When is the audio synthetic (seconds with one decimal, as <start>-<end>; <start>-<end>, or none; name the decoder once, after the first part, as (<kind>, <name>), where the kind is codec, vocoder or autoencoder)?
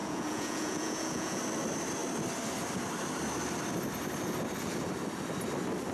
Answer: 0.0-1.4 (vocoder, Vocos)